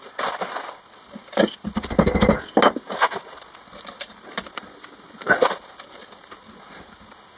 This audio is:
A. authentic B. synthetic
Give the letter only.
A